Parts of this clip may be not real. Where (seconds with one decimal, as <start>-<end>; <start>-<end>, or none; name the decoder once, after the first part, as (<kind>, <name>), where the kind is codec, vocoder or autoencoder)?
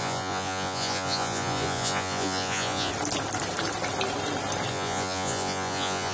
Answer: 0.0-2.9 (vocoder, Vocos); 4.7-6.1